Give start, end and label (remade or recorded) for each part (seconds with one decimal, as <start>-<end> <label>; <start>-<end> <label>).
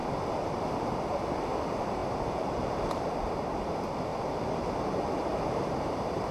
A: 0.0-0.6 recorded; 0.6-4.1 remade; 4.1-5.5 recorded; 5.5-6.3 remade